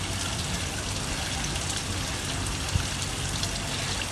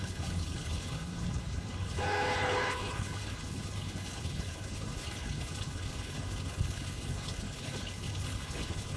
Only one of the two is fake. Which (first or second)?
second